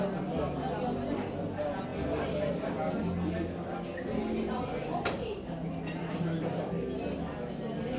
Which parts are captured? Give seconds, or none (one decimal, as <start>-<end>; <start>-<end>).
0.0-8.0